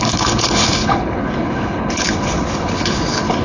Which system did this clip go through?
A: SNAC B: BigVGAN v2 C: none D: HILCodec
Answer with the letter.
D